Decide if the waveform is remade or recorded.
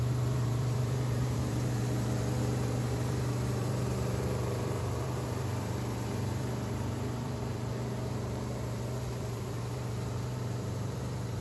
remade